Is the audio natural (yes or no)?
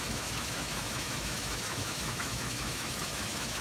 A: no